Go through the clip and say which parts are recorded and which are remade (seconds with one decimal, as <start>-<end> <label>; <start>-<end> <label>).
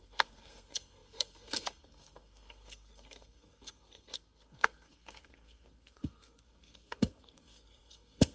0.0-8.3 remade